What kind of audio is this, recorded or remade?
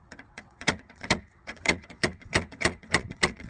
remade